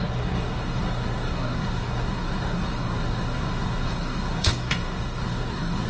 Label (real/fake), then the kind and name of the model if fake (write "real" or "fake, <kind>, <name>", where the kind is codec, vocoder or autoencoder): fake, codec, SNAC